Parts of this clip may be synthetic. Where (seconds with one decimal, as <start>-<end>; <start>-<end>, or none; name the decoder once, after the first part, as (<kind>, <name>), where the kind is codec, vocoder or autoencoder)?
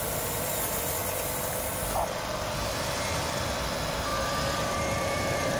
4.1-5.6 (vocoder, BigVGAN v2)